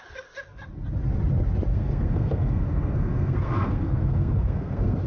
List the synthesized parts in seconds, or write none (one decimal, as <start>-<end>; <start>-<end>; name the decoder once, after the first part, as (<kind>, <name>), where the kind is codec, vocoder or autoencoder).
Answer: 1.7-5.1 (codec, SNAC)